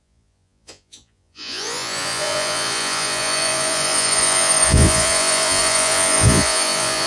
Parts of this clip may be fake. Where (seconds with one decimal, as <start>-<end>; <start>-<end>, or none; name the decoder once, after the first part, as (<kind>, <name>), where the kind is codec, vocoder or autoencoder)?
0.0-7.1 (vocoder, Vocos)